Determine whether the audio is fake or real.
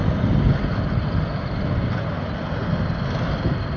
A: real